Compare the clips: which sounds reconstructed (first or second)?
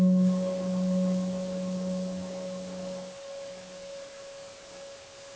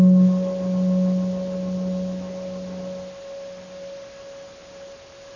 first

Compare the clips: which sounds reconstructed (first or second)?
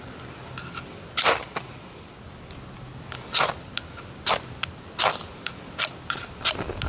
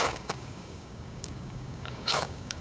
second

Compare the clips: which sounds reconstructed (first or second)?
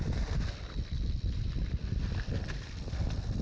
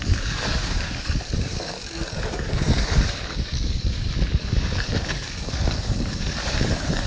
second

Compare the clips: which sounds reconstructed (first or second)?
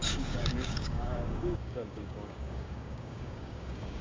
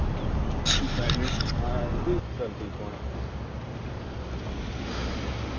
first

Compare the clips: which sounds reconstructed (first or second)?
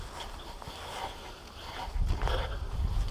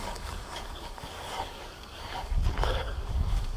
second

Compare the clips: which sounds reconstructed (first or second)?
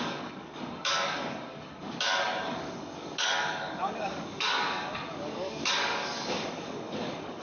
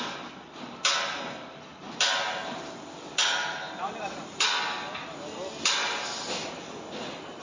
first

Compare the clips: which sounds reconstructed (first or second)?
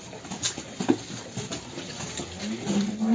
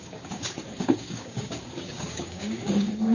second